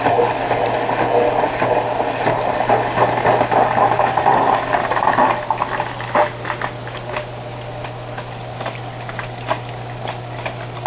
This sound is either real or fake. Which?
real